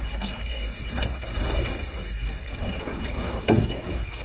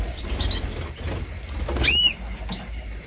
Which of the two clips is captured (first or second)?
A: second